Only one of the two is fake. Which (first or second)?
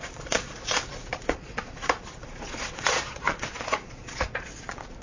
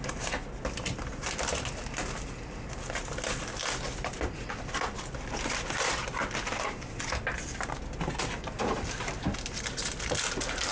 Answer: first